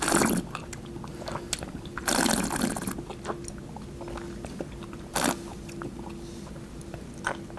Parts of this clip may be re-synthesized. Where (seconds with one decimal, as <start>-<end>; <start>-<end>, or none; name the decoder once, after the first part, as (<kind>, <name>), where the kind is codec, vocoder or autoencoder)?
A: none